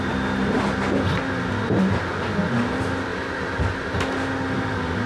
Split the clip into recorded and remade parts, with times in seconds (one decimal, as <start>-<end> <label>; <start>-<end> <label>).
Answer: 0.0-5.1 recorded